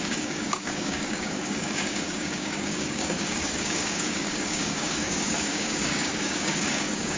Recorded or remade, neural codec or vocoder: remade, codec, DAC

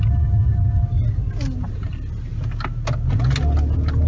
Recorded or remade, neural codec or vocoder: recorded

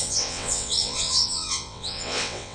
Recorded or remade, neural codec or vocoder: remade, vocoder, WaveNeXt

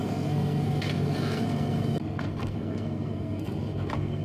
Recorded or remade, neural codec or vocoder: remade, codec, SNAC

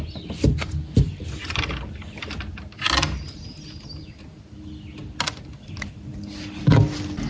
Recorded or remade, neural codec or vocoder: recorded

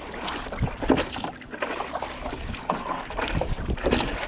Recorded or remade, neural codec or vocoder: recorded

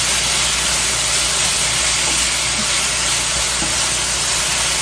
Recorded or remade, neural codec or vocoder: recorded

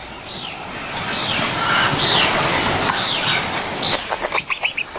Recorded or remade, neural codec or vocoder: recorded